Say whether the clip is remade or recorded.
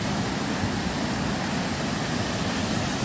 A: recorded